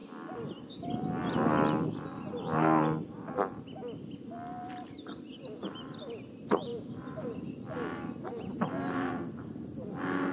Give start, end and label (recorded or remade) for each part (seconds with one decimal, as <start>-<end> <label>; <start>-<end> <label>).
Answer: 0.0-6.7 recorded; 6.7-9.1 remade; 9.1-10.3 recorded